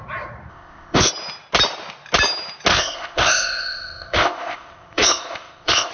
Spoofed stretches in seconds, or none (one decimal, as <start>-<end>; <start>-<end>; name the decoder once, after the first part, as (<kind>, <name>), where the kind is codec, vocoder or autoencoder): 0.5-1.1 (codec, ZipCodec); 2.7-5.9